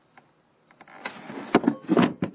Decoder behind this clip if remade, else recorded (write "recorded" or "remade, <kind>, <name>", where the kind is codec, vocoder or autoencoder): recorded